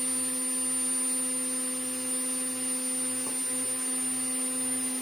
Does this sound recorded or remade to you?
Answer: recorded